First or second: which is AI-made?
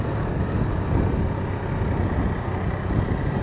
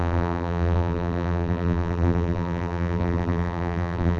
second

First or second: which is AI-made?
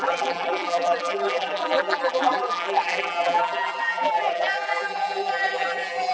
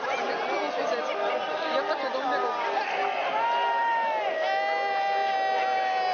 first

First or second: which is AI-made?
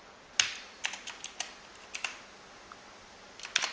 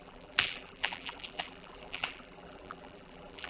second